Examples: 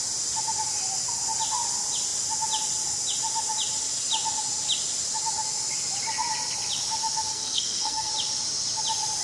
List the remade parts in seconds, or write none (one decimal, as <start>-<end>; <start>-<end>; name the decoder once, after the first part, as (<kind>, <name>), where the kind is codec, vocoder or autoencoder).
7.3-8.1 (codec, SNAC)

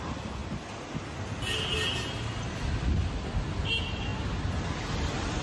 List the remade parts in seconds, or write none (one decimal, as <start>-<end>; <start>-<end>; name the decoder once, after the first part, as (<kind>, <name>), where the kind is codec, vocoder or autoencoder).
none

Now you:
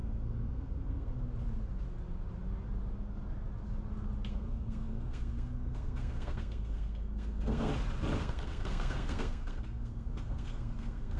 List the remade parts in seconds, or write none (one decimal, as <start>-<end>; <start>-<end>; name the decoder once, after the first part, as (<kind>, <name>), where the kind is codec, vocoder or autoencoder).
0.0-1.1 (codec, SNAC); 4.3-7.7; 8.2-11.2

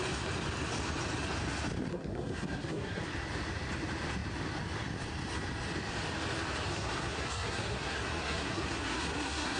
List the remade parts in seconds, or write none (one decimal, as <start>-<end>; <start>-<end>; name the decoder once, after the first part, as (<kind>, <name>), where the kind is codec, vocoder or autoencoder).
1.9-3.0 (codec, SNAC); 6.7-9.6